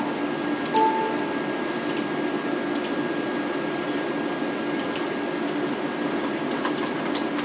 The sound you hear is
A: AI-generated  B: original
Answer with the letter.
B